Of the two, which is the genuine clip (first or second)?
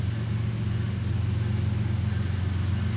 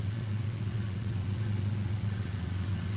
first